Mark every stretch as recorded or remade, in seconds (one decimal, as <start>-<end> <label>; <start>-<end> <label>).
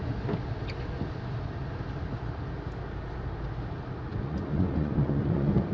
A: 0.0-4.1 recorded; 4.1-5.7 remade